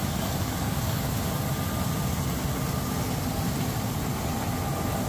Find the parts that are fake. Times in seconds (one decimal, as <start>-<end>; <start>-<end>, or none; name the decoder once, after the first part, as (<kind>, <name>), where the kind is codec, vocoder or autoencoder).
0.0-1.0 (codec, DAC)